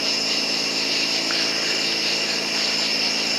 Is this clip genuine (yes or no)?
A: yes